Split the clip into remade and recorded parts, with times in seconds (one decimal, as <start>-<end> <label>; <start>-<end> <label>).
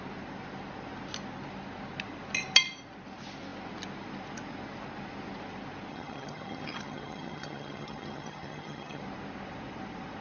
0.0-5.9 recorded; 5.9-9.0 remade; 9.0-10.2 recorded